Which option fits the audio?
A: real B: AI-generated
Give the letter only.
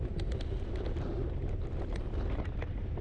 A